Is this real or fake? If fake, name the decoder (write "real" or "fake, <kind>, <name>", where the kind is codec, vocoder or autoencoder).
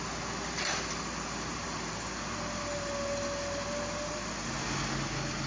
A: real